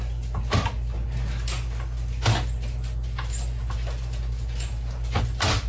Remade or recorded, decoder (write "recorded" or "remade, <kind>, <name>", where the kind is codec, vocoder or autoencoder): recorded